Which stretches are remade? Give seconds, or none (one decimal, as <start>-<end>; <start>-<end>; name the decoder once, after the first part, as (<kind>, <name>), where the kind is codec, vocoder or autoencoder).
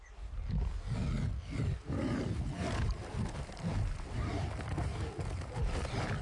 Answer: 0.0-1.8 (vocoder, BigVGAN v2); 3.0-6.2